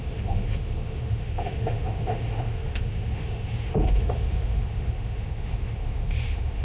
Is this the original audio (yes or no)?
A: no